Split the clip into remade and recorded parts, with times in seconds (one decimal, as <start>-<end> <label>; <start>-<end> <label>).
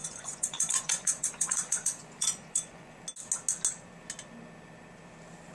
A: 0.0-2.9 remade; 2.9-5.5 recorded